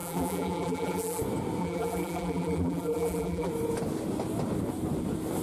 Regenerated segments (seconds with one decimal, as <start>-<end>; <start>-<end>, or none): 0.0-1.2; 1.6-3.5